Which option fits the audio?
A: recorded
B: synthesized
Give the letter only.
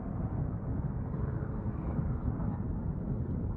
A